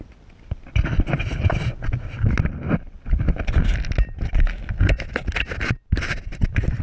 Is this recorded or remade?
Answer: recorded